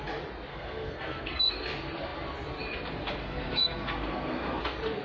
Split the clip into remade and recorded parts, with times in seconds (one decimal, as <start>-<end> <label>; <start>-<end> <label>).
0.0-0.5 recorded; 0.5-1.5 remade; 1.5-3.2 recorded; 3.2-4.6 remade; 4.6-5.0 recorded